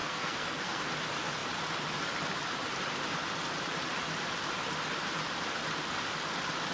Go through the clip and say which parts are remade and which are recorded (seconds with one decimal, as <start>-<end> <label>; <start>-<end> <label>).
0.0-0.8 remade; 0.8-6.7 recorded